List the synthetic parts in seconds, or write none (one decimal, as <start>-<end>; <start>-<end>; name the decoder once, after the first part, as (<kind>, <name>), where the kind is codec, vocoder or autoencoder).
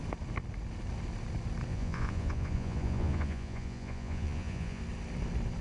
1.7-4.8 (vocoder, Vocos)